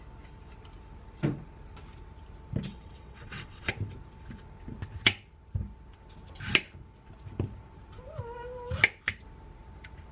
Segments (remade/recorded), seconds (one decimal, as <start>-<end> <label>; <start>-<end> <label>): 0.0-2.7 recorded; 2.7-3.7 remade; 3.7-10.1 recorded